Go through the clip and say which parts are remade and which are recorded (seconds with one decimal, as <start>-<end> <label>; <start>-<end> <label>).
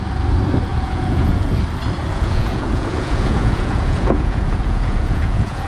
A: 0.0-0.7 recorded; 0.7-1.5 remade; 1.5-2.0 recorded; 2.0-5.7 remade